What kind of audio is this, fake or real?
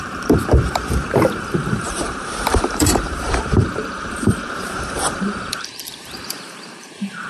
fake